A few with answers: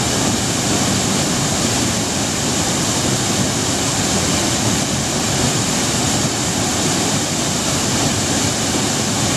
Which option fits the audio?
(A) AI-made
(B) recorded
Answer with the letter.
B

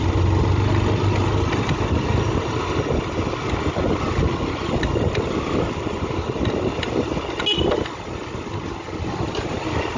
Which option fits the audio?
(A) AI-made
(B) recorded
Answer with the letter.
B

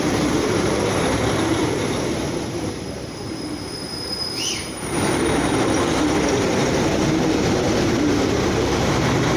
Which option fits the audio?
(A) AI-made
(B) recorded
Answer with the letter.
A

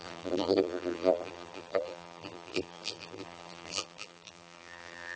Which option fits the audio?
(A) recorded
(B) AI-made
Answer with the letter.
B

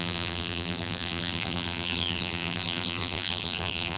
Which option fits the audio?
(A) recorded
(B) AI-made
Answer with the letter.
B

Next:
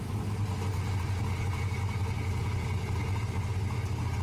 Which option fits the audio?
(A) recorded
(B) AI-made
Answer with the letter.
A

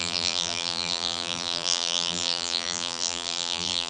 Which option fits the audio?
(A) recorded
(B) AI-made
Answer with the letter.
B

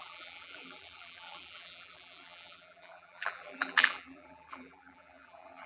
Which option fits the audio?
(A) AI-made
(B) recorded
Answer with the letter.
A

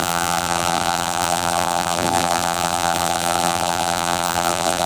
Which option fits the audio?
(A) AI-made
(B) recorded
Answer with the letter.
A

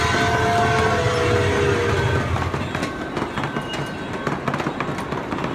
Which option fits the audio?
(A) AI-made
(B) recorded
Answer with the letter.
B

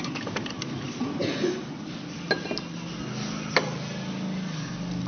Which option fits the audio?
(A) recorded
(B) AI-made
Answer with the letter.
A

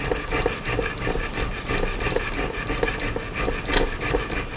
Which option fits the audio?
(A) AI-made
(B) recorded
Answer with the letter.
B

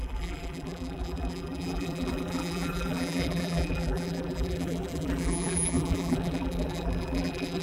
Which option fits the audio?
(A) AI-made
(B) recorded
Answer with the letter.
A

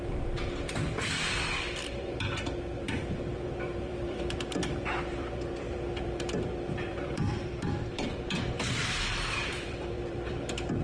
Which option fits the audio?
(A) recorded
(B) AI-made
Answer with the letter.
B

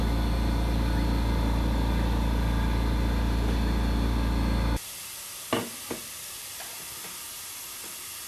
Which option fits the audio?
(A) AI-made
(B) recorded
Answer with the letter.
B